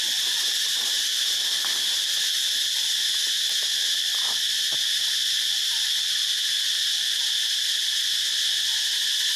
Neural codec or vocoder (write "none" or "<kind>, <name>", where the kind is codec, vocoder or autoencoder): none